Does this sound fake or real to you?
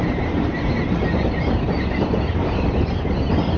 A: fake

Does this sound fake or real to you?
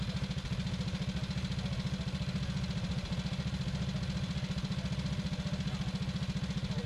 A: real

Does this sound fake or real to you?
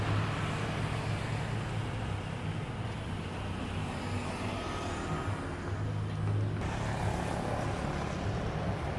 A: real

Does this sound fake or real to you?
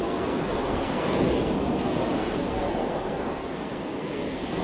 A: fake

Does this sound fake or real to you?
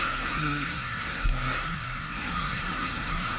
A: fake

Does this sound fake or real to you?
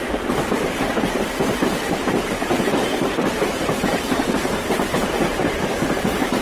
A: real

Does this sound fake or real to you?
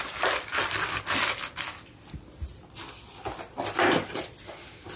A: real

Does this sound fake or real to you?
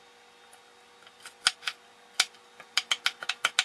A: real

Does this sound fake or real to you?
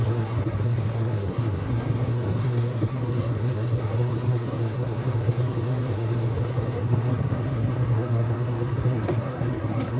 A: fake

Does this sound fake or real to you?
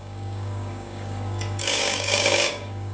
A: fake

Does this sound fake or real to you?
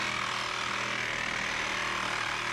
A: real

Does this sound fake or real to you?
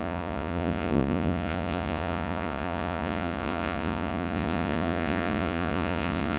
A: fake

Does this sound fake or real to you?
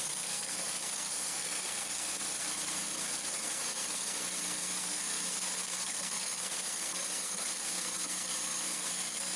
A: fake